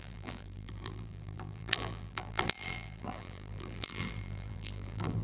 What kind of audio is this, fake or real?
fake